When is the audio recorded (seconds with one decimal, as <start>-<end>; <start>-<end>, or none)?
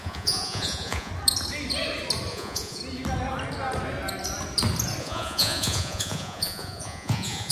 1.1-2.3; 2.8-5.0